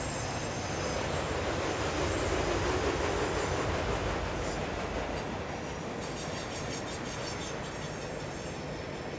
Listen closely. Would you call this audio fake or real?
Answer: real